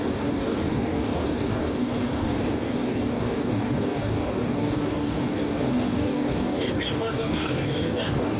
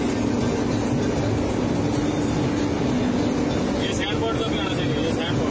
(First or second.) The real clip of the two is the second